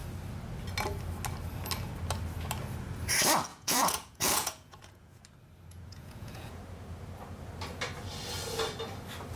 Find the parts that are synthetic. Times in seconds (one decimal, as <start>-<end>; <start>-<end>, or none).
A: 3.5-5.2; 5.7-6.6